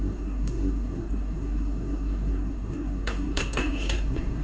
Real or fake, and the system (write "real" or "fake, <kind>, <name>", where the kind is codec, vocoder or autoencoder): fake, codec, SNAC